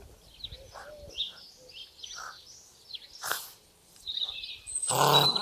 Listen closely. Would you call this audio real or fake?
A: real